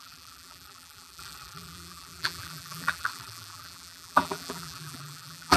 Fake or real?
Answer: fake